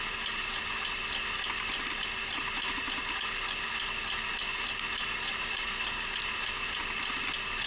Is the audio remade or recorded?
recorded